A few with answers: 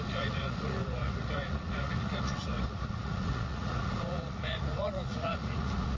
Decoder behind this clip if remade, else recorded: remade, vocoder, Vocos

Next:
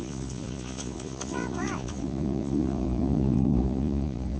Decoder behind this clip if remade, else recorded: remade, vocoder, Vocos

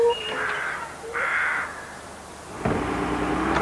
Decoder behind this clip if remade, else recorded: recorded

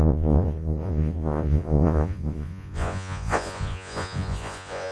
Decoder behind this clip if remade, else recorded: remade, vocoder, Vocos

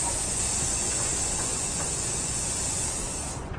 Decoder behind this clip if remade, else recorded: remade, vocoder, Vocos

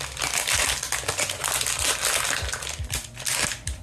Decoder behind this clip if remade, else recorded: recorded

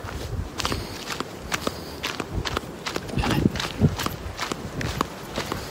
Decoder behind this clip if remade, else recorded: recorded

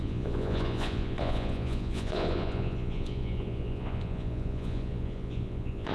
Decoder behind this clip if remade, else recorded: remade, vocoder, Vocos